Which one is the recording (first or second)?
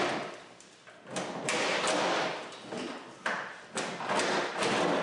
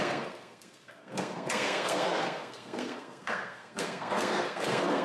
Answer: first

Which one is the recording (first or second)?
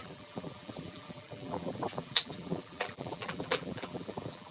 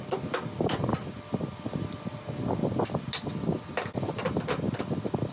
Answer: second